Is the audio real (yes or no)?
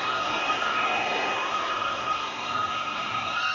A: no